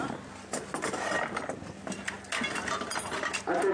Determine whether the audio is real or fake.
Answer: real